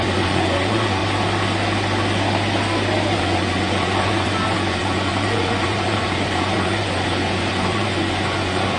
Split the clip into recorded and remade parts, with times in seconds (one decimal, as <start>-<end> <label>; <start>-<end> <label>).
0.0-1.0 remade; 1.0-3.2 recorded; 3.2-8.8 remade